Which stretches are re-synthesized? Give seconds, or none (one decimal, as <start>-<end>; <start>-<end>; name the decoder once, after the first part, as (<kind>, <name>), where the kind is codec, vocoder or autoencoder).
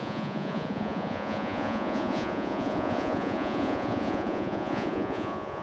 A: 0.0-5.6 (vocoder, Vocos)